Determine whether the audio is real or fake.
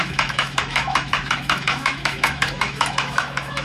fake